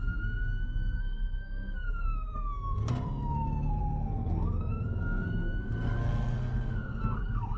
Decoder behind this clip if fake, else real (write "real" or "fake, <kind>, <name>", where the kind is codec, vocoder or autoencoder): fake, codec, SNAC